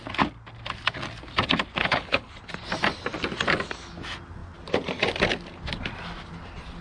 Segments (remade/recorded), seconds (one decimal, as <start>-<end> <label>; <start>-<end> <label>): 0.0-1.8 recorded; 1.8-2.3 remade; 2.3-6.8 recorded